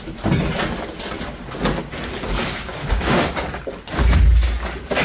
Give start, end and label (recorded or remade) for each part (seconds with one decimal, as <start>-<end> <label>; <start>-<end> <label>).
0.0-2.8 recorded; 2.8-3.3 remade; 3.3-5.0 recorded